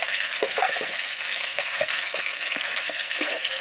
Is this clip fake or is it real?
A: fake